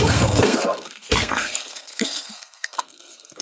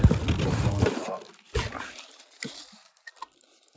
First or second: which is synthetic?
first